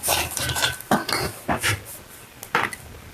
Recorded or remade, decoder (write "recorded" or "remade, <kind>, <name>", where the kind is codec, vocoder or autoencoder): recorded